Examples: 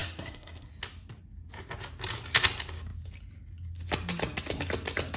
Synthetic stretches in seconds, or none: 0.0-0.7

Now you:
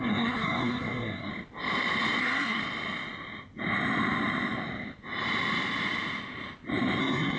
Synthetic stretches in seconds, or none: 0.0-1.3; 2.2-2.6; 7.0-7.4

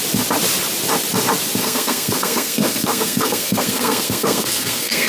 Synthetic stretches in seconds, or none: 1.6-5.1

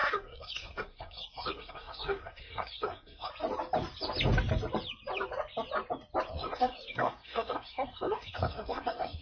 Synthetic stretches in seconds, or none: 0.0-3.3; 6.3-9.2

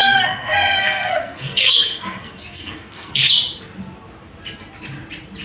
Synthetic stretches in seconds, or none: 0.0-3.2

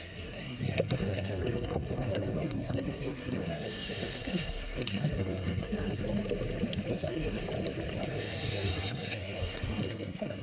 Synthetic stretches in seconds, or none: 0.0-6.0; 6.9-7.4; 8.0-10.4